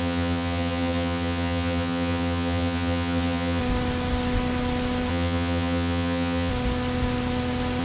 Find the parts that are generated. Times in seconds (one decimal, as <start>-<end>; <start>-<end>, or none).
0.0-3.6; 5.1-6.5